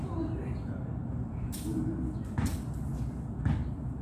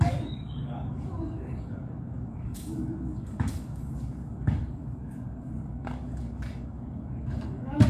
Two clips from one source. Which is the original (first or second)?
first